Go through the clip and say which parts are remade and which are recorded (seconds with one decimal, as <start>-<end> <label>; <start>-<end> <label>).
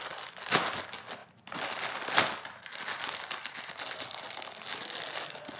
0.0-5.6 recorded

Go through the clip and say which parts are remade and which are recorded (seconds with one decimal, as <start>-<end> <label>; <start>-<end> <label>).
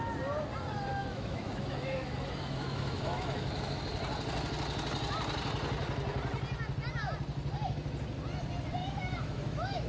0.0-1.0 recorded; 1.0-3.8 remade; 3.8-8.8 recorded; 8.8-9.9 remade